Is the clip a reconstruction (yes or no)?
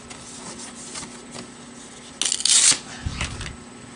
no